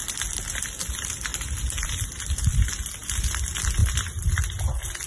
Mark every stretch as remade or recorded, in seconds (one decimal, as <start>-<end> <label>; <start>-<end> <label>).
0.0-5.1 recorded